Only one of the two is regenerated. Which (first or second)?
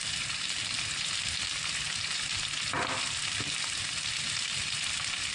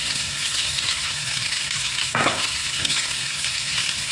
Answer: second